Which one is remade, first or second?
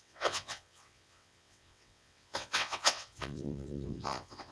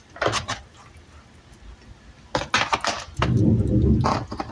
first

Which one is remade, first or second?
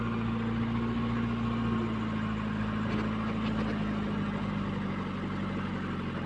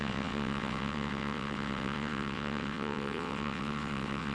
second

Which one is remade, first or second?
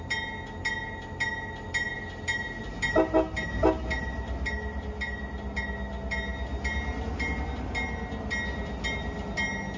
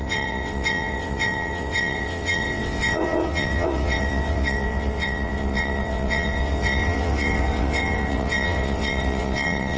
second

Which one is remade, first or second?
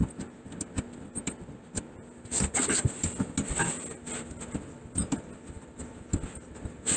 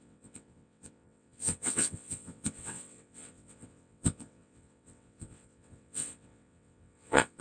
second